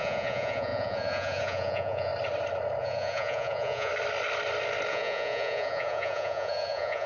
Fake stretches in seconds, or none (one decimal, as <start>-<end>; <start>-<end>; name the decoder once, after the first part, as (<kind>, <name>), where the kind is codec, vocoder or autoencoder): 0.0-2.1 (vocoder, Vocos); 2.8-3.9; 4.9-7.1